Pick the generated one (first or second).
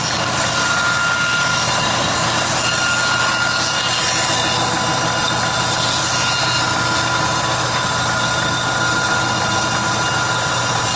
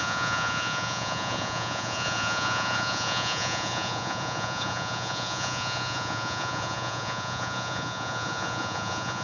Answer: second